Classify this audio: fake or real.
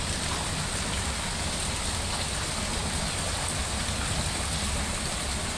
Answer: real